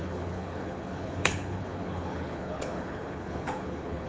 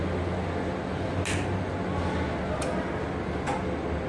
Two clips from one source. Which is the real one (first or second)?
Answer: second